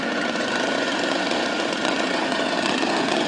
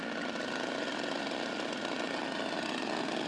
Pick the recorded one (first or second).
second